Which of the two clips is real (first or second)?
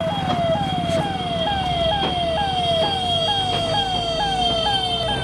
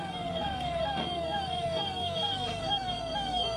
first